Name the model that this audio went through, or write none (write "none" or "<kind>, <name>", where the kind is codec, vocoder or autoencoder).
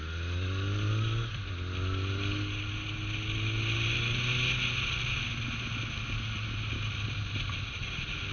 none